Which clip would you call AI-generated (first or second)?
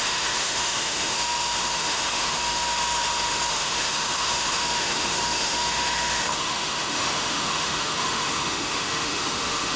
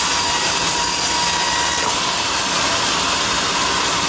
first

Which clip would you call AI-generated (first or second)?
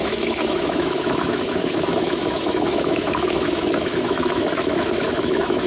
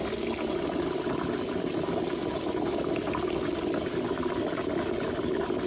first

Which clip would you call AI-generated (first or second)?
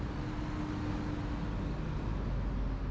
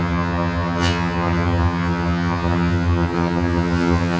second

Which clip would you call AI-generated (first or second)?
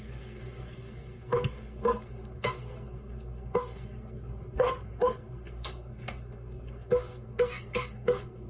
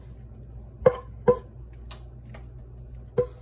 first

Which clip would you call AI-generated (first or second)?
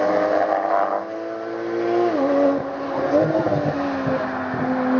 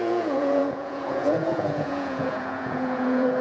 second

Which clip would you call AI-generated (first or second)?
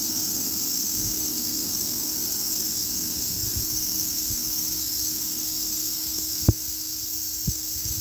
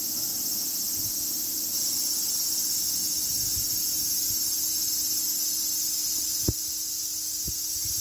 first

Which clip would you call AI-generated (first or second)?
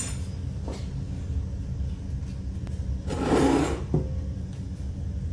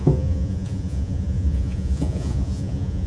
second